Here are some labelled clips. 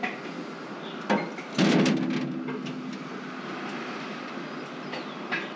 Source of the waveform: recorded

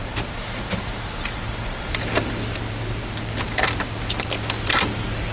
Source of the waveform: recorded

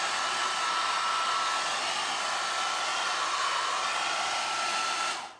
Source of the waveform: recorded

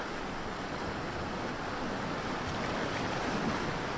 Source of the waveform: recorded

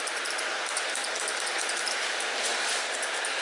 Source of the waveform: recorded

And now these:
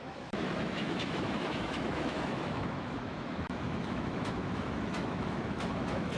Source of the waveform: remade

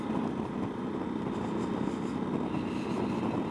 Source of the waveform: recorded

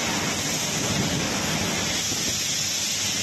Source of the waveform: recorded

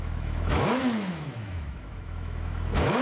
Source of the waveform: remade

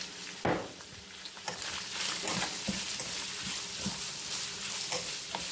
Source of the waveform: recorded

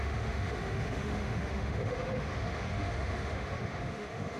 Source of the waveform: remade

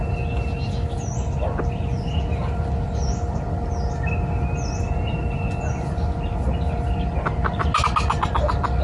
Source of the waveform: recorded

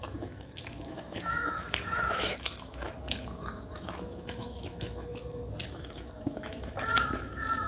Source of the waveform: remade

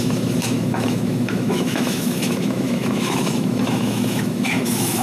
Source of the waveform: remade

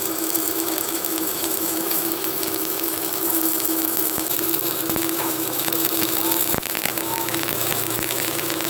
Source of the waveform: remade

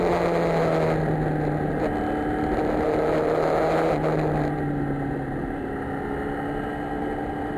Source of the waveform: recorded